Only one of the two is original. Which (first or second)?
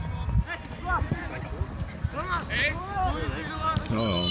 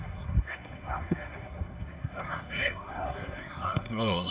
first